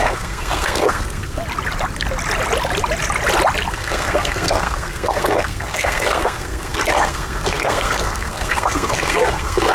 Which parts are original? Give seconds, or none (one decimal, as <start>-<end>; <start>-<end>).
1.4-3.7